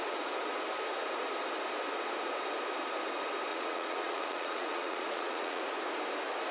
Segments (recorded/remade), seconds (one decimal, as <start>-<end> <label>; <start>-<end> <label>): 0.0-3.5 recorded; 3.5-5.6 remade; 5.6-6.5 recorded